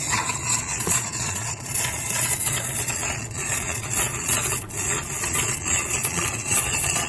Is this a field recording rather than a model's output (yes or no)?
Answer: no